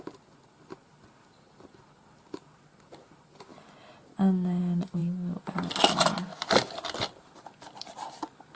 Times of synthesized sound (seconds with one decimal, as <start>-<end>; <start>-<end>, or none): 5.0-5.7; 6.3-8.1